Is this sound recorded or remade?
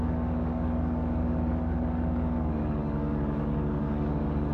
remade